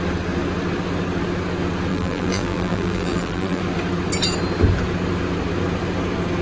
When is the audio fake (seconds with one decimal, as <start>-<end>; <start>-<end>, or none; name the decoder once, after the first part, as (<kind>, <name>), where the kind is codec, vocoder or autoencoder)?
1.9-3.6 (vocoder, BigVGAN v2)